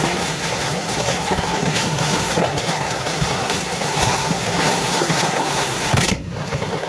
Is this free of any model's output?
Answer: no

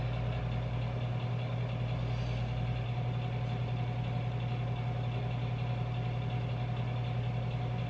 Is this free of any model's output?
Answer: yes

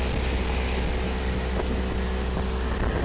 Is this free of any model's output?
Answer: yes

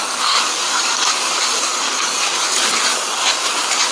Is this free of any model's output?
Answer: no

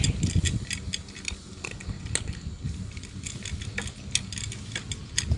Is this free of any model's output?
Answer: yes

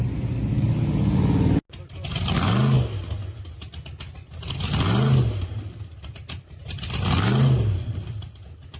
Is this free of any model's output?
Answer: yes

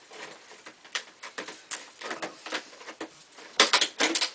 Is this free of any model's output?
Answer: no